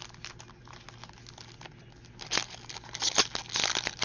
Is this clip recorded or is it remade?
recorded